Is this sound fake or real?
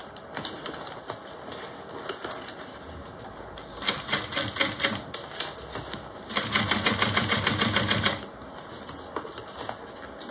real